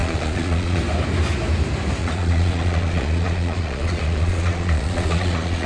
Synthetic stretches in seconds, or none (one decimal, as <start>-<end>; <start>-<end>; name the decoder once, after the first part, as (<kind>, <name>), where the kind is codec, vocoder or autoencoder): 0.0-0.8 (vocoder, Vocos); 2.0-5.7